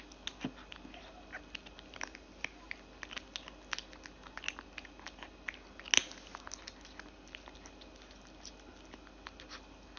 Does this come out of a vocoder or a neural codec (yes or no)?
no